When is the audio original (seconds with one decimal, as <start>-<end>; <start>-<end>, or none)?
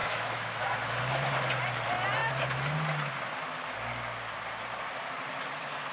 0.6-5.9